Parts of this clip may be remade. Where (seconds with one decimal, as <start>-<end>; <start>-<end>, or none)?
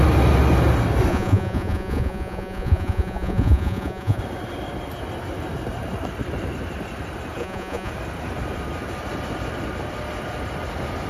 1.1-4.2; 7.4-7.9